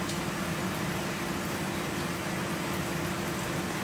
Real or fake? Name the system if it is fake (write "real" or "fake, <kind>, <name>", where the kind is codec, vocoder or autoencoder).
real